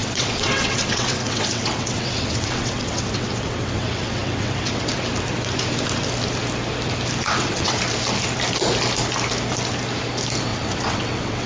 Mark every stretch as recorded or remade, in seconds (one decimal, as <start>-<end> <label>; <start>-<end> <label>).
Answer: 0.0-4.9 remade; 4.9-7.2 recorded; 7.2-7.8 remade; 7.8-10.5 recorded; 10.5-11.5 remade